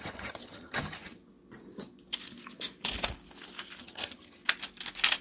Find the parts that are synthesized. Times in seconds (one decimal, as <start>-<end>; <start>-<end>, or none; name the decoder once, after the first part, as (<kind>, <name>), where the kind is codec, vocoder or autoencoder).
0.0-1.2 (vocoder, HiFi-GAN); 3.8-4.4